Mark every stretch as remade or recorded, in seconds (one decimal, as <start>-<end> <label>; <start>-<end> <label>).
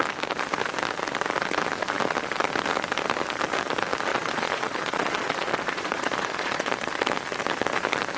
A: 0.0-4.1 recorded; 4.1-6.7 remade; 6.7-8.2 recorded